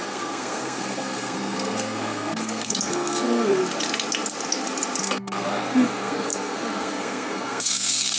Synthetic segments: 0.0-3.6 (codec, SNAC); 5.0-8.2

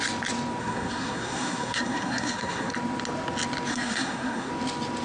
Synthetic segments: 0.6-2.7 (codec, SNAC); 3.7-4.5

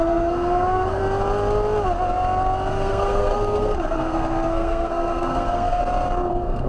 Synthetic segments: 0.0-1.0 (codec, SNAC); 2.7-5.8; 6.3-6.7

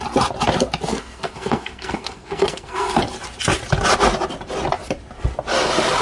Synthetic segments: 0.9-3.0 (codec, SNAC)

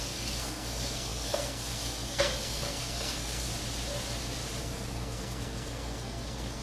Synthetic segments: 0.0-3.5 (codec, SNAC); 4.6-6.6

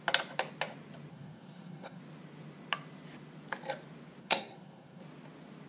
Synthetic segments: 1.1-2.0 (codec, SNAC); 4.2-5.0

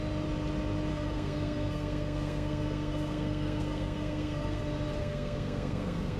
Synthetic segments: 0.9-4.6 (codec, SNAC); 5.0-6.2

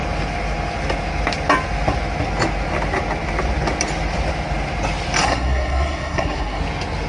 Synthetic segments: 5.2-6.6 (codec, SNAC)